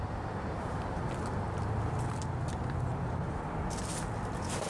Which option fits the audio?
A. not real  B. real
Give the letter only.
B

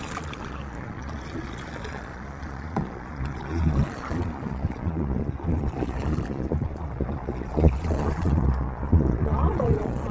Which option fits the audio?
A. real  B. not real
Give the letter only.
B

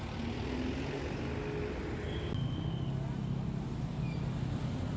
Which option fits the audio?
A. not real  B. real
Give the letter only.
B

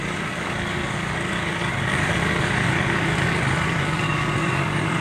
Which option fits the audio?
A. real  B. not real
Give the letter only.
B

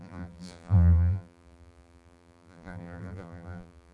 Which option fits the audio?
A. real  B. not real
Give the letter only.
B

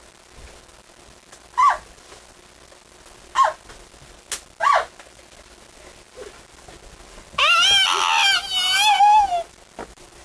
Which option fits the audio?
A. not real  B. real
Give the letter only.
B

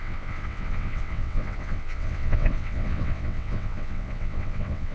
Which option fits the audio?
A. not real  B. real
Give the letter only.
A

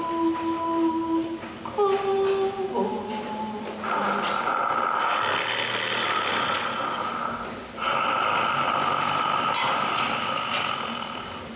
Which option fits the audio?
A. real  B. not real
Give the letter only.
A